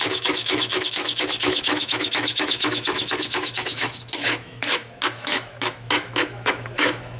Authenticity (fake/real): fake